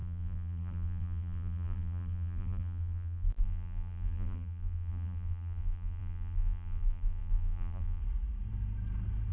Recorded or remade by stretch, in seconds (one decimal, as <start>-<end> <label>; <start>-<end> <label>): 0.0-8.0 remade; 8.0-9.3 recorded